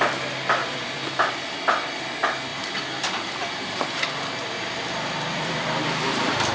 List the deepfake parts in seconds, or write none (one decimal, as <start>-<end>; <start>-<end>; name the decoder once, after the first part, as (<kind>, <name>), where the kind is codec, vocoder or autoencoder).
0.6-1.3 (vocoder, BigVGAN v2); 2.5-3.9; 4.4-6.5